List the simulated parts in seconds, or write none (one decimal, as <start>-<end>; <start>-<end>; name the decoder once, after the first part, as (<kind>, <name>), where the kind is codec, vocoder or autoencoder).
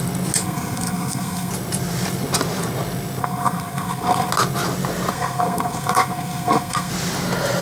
0.4-1.5 (codec, SNAC); 3.2-4.3; 5.1-6.9